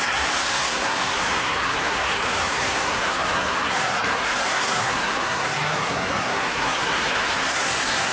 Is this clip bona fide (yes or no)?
no